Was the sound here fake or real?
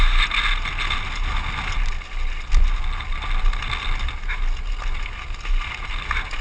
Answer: real